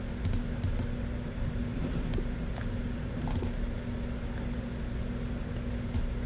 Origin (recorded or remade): recorded